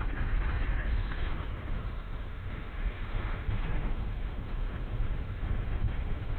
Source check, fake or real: fake